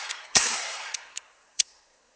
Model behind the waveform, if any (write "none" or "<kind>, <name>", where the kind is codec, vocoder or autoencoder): codec, SNAC